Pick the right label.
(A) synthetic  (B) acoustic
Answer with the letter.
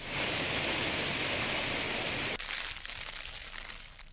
B